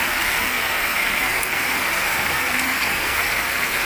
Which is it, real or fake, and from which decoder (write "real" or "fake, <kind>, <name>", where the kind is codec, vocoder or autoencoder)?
fake, codec, SNAC